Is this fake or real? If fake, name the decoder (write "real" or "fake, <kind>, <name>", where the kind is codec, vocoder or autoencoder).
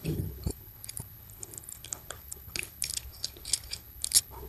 fake, codec, HILCodec